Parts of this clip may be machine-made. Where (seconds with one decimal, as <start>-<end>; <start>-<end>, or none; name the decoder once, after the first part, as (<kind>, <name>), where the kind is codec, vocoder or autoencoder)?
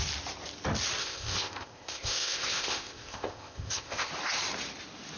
1.0-4.1 (codec, ZipCodec)